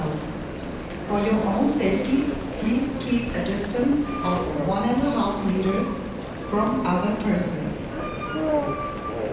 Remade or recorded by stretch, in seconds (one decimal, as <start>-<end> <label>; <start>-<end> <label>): 0.0-1.4 recorded; 1.4-2.7 remade; 2.7-9.3 recorded